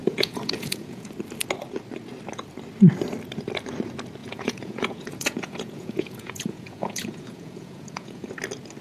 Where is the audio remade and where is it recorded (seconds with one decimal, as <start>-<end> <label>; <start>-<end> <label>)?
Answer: 0.0-1.1 remade; 1.1-4.2 recorded; 4.2-8.3 remade; 8.3-8.8 recorded